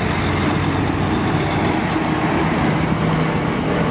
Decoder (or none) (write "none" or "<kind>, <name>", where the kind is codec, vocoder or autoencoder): none